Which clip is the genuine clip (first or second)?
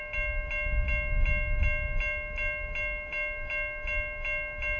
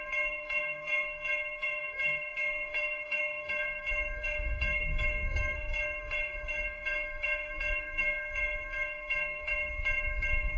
first